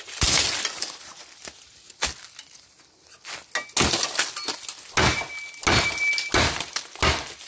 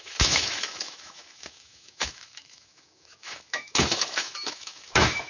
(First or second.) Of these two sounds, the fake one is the second